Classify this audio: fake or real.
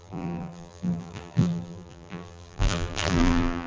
fake